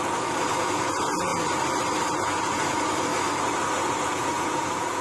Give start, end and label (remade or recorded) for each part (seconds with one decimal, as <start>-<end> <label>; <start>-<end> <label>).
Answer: 0.0-1.3 remade; 1.3-2.1 recorded; 2.1-3.1 remade; 3.1-4.0 recorded; 4.0-5.0 remade